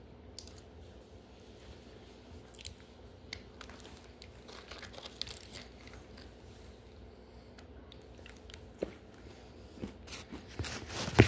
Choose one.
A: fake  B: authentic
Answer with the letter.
B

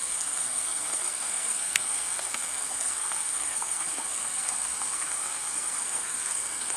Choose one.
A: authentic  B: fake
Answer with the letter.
B